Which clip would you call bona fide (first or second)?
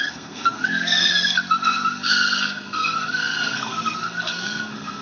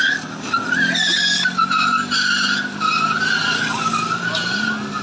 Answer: second